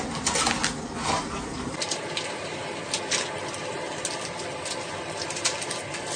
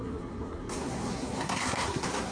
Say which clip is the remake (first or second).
second